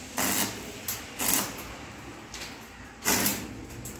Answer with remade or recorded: recorded